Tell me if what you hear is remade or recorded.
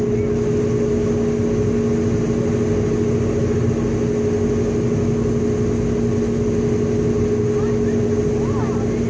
recorded